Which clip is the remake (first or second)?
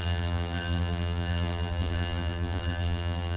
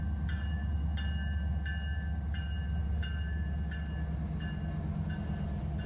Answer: first